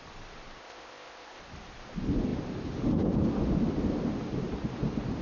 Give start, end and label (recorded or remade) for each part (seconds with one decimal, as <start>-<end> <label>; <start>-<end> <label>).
0.0-0.6 recorded; 0.6-1.4 remade; 1.4-5.2 recorded

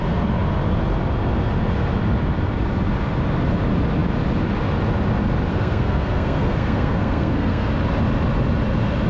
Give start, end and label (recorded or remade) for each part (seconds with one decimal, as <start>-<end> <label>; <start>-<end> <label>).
0.0-5.5 recorded; 5.5-7.7 remade; 7.7-9.1 recorded